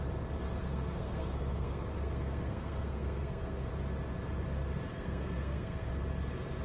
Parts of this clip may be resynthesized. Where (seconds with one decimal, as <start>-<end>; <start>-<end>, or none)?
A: 0.6-3.7; 4.9-5.9